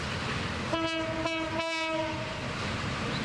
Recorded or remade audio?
recorded